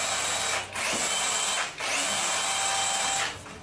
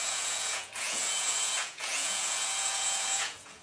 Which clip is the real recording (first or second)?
first